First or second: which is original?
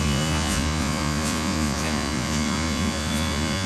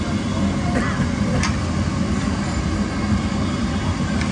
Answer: second